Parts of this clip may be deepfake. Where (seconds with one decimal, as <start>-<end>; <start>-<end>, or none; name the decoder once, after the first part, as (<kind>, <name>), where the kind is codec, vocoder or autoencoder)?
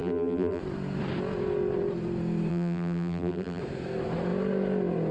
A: 0.0-0.6 (vocoder, BigVGAN v2); 2.5-3.6